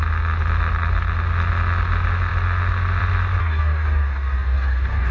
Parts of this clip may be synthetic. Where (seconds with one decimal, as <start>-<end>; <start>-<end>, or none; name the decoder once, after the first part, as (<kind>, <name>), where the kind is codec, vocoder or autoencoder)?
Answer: 3.4-5.1 (codec, DAC)